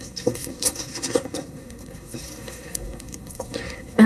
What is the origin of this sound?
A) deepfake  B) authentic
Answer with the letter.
A